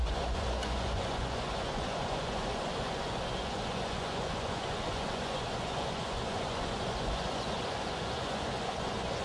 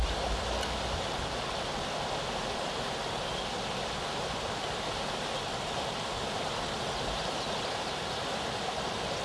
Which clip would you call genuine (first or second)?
second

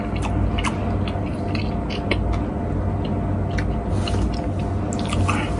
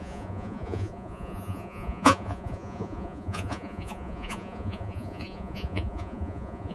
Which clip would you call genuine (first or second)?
first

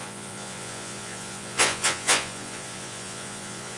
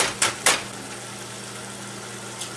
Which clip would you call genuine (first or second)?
second